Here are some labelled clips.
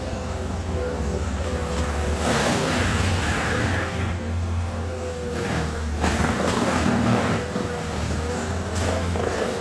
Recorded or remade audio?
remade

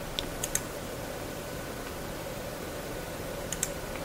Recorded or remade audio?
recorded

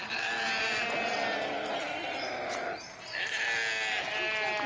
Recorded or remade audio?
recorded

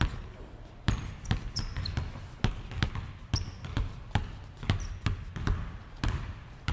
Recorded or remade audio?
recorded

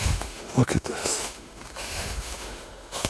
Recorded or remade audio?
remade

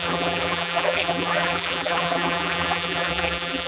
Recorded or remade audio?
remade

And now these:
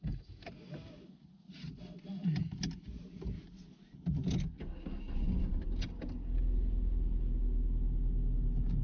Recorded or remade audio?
recorded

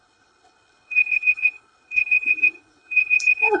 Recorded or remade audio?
remade